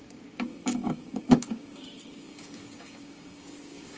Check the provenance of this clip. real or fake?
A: fake